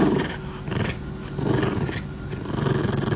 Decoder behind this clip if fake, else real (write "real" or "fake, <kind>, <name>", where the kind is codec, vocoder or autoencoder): real